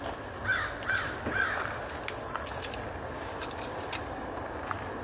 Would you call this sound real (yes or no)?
yes